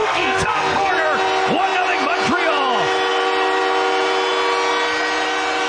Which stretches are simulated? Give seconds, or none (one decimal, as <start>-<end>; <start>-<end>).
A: 0.0-0.9